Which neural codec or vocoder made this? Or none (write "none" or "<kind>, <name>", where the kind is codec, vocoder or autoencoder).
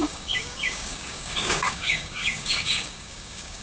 codec, DAC